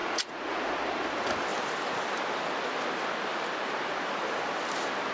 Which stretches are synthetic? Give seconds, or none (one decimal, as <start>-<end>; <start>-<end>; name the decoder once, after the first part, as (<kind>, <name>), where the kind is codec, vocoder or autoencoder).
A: 0.0-0.7 (vocoder, Vocos)